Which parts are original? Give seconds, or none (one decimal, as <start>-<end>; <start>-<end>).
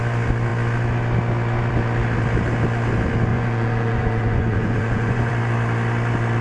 0.0-3.3; 5.3-6.4